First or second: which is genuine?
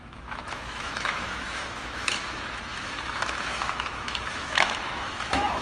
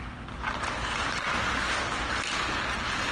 second